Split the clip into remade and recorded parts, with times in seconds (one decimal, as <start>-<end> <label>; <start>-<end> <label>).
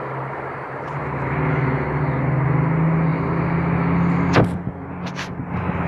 0.0-5.9 recorded